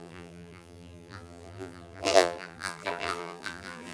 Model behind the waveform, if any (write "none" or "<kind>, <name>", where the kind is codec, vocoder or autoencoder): vocoder, BigVGAN v2